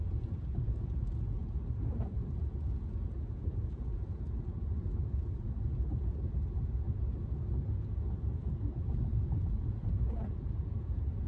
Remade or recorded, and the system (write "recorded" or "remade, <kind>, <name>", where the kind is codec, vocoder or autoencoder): remade, vocoder, Vocos